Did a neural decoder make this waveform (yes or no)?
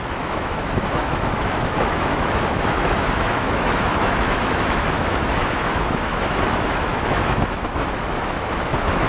yes